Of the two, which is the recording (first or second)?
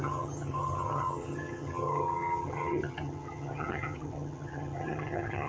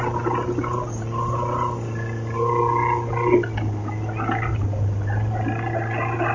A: second